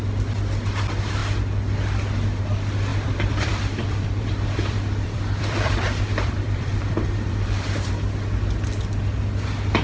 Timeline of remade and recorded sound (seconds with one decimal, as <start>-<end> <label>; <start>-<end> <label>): 0.0-2.9 recorded; 2.9-7.9 remade; 7.9-9.8 recorded